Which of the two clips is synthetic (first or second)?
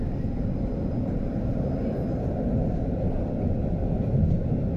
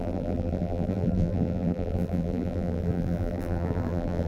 second